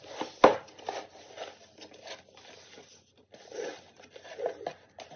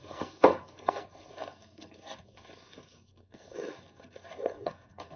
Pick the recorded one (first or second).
first